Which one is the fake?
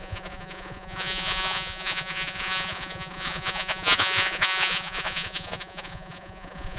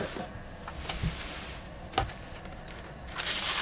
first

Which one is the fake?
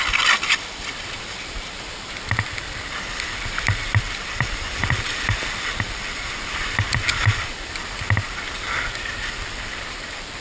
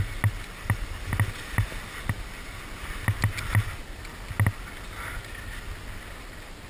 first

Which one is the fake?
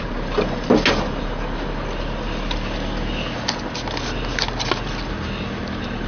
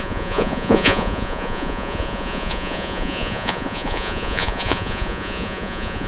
second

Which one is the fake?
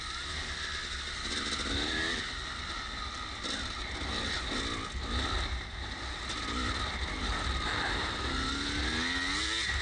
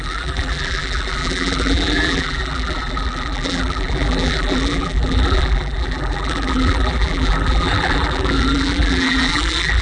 second